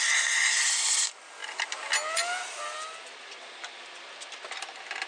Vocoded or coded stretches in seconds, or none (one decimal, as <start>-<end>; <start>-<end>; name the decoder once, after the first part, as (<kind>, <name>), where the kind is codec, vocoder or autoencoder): none